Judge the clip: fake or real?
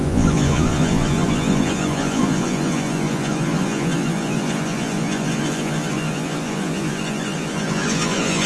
fake